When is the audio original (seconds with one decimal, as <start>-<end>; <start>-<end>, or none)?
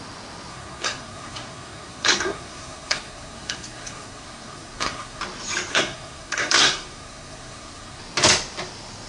0.0-0.5; 5.2-5.7; 8.0-9.1